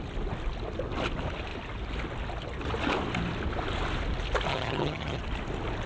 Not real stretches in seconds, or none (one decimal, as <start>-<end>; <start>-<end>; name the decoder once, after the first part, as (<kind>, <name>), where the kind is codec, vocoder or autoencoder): 4.5-5.2 (vocoder, HiFi-GAN)